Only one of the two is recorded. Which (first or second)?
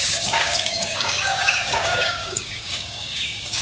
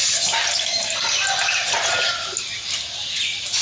second